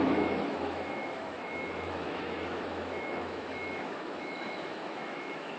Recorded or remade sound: remade